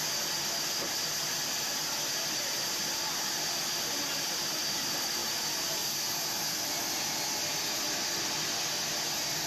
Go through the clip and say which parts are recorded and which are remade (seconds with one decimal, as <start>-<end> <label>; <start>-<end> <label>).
0.0-9.5 recorded